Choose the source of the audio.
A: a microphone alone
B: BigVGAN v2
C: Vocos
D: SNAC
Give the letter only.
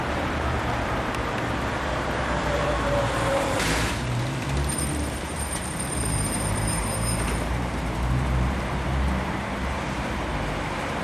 B